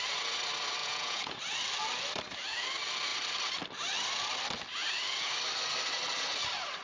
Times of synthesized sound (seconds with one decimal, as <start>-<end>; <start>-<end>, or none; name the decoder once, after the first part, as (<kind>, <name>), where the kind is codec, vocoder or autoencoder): 0.8-1.4 (vocoder, Vocos)